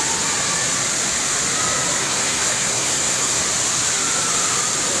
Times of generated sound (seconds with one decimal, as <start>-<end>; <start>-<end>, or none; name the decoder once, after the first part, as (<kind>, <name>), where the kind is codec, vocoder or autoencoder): 2.0-3.4 (codec, SNAC)